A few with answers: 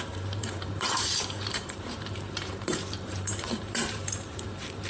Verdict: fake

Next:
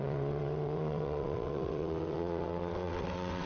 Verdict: fake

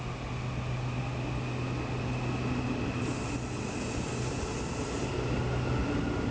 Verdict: real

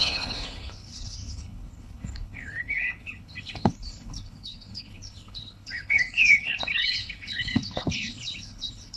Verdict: fake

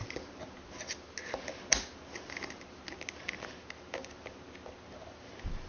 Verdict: real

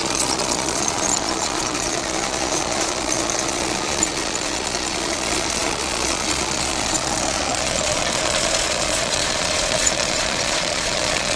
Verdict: fake